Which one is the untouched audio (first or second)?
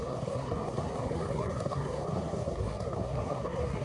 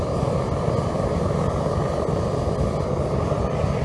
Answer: second